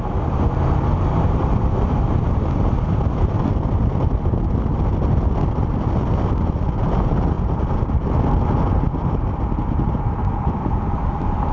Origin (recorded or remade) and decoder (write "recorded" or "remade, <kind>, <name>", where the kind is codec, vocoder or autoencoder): recorded